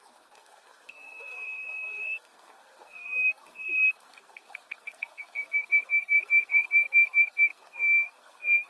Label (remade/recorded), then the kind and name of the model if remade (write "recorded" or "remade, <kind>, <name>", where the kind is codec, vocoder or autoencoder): remade, codec, SNAC